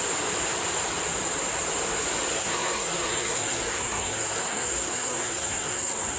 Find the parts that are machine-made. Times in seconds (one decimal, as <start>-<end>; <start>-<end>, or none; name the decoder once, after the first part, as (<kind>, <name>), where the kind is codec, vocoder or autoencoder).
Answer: 2.3-6.2 (codec, SNAC)